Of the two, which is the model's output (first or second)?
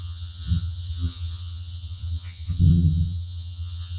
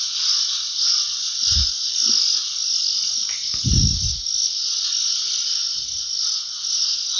first